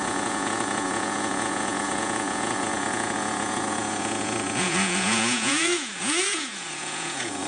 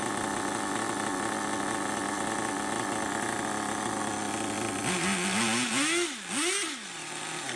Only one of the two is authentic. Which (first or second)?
second